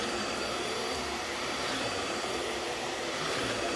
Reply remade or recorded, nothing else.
remade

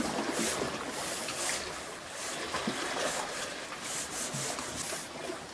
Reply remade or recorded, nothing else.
recorded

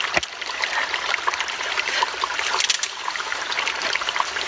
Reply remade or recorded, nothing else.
recorded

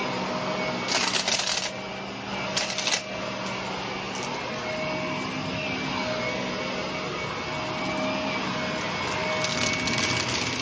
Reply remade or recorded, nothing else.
recorded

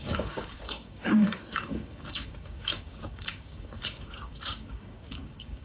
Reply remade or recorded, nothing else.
remade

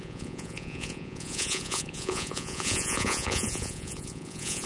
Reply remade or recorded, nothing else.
remade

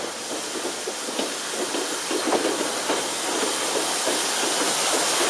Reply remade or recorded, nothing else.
recorded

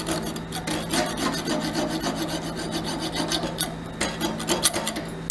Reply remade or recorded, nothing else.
recorded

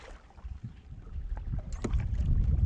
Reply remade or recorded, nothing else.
recorded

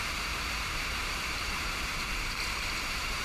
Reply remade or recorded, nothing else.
remade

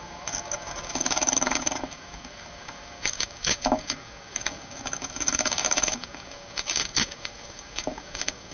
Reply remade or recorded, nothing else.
remade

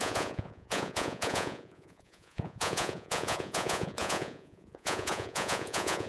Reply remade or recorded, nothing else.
remade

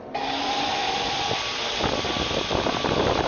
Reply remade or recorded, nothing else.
recorded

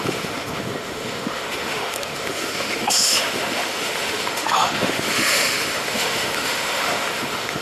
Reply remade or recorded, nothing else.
remade